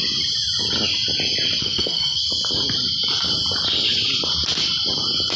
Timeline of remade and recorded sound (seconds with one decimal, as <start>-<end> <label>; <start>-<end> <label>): 0.0-1.6 recorded; 1.6-2.2 remade; 2.2-5.4 recorded